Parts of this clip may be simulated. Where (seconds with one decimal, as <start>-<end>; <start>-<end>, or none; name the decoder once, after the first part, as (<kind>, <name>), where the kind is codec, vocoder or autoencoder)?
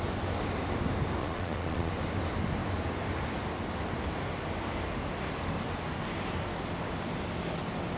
1.2-1.9 (vocoder, Vocos)